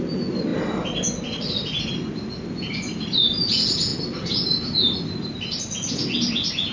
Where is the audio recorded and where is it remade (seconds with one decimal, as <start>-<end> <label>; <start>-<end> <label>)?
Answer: 0.0-6.7 recorded